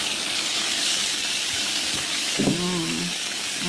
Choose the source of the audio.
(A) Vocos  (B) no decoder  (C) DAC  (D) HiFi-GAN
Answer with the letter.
C